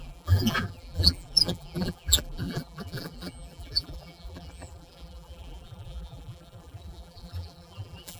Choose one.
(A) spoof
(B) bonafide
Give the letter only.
A